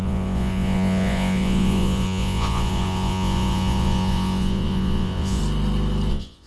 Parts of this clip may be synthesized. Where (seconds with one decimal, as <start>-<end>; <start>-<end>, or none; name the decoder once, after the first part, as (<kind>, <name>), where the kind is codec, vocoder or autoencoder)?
0.0-5.4 (vocoder, Vocos); 6.1-6.5